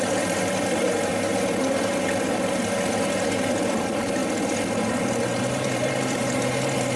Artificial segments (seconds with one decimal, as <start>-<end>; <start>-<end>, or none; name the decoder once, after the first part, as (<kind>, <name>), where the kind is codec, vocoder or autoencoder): 0.0-1.1 (vocoder, BigVGAN v2); 3.8-4.2; 4.8-7.0